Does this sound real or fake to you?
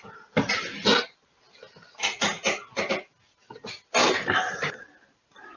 real